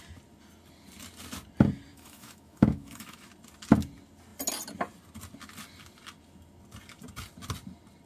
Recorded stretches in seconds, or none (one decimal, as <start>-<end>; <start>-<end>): 0.0-1.9; 3.3-8.1